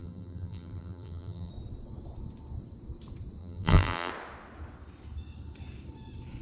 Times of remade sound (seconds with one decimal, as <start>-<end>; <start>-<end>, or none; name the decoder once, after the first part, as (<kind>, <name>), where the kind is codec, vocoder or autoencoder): 0.0-1.5 (vocoder, BigVGAN v2); 3.4-4.1